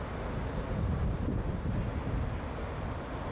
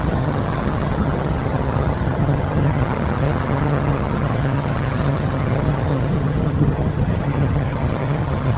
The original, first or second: first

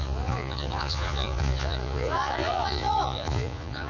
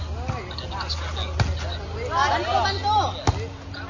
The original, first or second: second